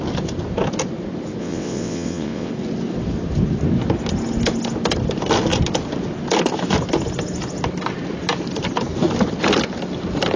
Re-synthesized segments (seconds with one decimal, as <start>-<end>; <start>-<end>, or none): 1.4-2.5